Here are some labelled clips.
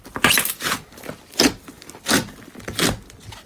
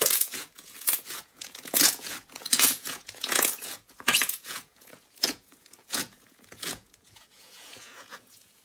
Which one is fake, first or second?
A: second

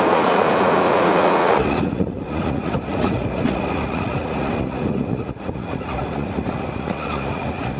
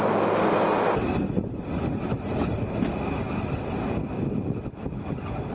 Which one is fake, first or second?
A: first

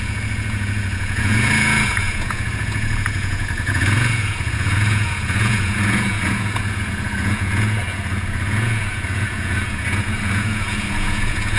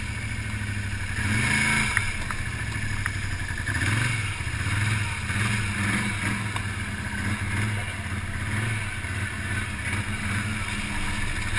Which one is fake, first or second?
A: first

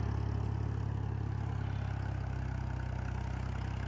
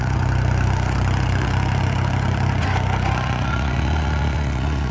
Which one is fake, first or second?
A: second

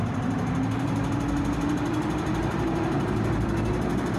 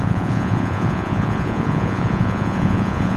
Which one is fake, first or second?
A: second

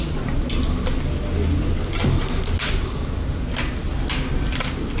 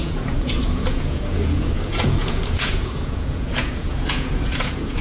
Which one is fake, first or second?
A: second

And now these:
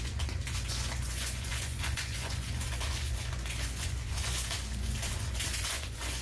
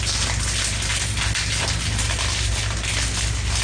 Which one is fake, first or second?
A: first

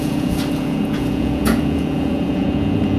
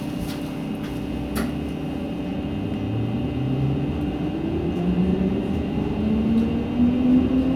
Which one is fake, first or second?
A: first